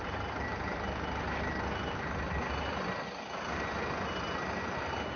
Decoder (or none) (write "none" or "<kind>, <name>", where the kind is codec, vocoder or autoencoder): none